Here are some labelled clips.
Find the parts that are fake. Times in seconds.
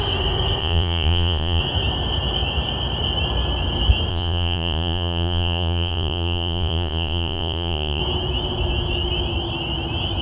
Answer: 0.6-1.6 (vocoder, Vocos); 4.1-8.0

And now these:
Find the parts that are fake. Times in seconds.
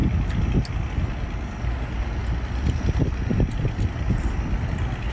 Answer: 2.2-3.2 (vocoder, BigVGAN v2)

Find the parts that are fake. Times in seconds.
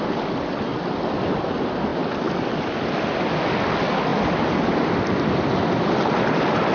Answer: none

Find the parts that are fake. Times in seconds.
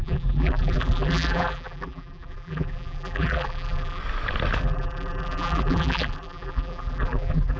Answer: 0.0-4.0 (vocoder, BigVGAN v2); 4.6-7.6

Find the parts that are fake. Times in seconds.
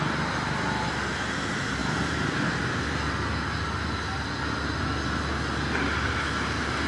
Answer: none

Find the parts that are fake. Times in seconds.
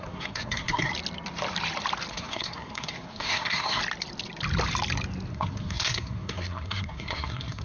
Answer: 0.0-0.9 (codec, SNAC); 2.1-3.8; 5.3-7.6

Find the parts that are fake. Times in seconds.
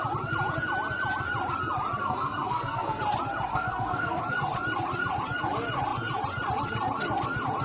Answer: 2.0-3.0 (codec, SNAC); 3.5-4.2